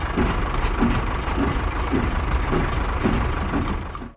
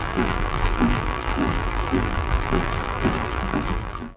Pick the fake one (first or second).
second